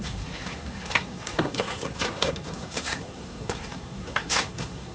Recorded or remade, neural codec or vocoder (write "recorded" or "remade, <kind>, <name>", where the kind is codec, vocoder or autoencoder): remade, codec, SNAC